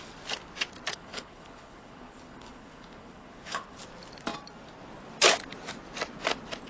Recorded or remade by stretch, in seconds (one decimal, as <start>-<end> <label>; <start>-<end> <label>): 0.0-0.9 recorded; 0.9-3.8 remade; 3.8-6.7 recorded